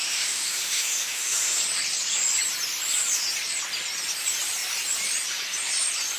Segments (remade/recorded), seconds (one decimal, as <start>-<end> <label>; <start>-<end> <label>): 0.0-1.6 remade; 1.6-6.2 recorded